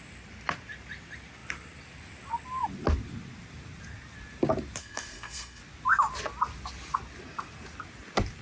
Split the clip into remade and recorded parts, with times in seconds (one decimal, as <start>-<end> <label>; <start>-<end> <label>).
0.0-4.8 recorded; 4.8-5.6 remade; 5.6-8.4 recorded